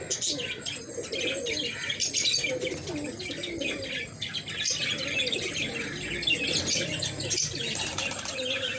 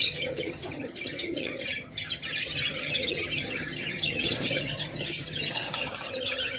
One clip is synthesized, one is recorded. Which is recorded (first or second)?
first